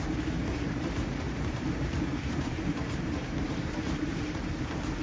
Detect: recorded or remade remade